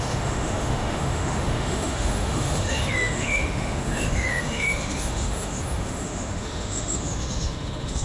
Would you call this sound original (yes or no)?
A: no